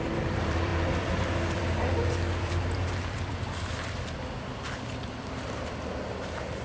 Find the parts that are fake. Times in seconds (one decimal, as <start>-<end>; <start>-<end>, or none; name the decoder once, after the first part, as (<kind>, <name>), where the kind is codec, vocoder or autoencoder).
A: 0.0-6.6 (vocoder, BigVGAN v2)